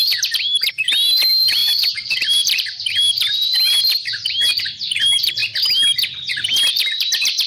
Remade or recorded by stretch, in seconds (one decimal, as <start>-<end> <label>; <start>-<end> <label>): 0.0-5.4 remade; 5.4-6.5 recorded; 6.5-7.5 remade